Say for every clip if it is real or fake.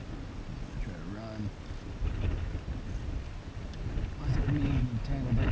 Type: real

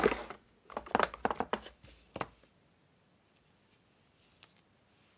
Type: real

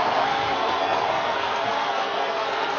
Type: fake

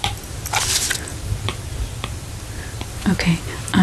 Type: fake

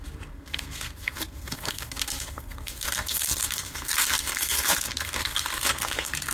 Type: fake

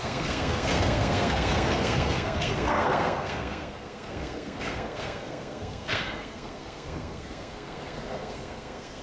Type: fake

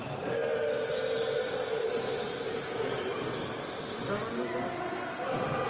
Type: real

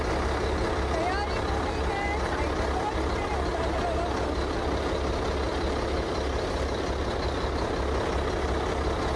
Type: real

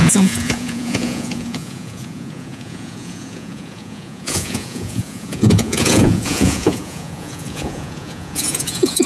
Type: fake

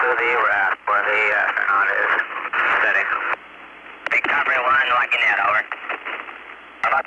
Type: real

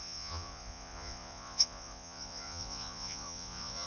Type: fake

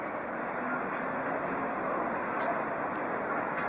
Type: real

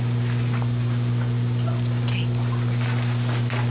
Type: real